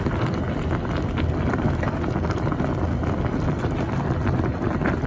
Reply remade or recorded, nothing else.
recorded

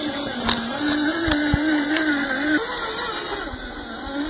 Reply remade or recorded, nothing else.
recorded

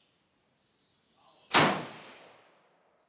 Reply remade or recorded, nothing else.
recorded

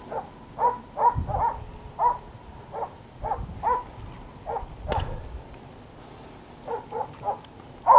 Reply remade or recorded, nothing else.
recorded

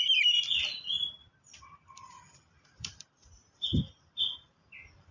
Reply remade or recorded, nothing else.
remade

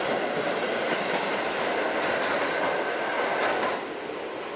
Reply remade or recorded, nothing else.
recorded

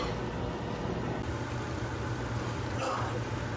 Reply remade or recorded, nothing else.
recorded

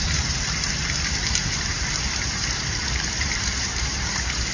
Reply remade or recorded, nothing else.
remade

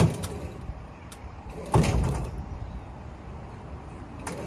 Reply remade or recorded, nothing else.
remade